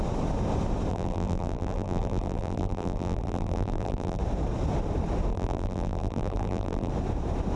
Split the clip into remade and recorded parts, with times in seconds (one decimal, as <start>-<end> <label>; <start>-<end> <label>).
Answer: 0.0-0.9 recorded; 0.9-4.2 remade; 4.2-5.3 recorded; 5.3-6.9 remade; 6.9-7.6 recorded